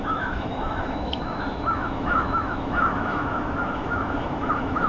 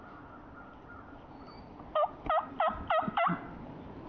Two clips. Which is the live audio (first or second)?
second